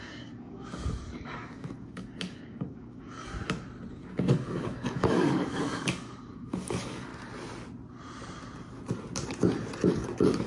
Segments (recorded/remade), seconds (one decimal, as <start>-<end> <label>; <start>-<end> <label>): 0.0-3.3 remade; 3.3-3.9 recorded; 3.9-7.1 remade; 7.1-9.9 recorded; 9.9-10.5 remade